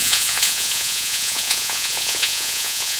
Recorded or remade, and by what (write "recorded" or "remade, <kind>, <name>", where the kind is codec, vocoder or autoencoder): remade, vocoder, Vocos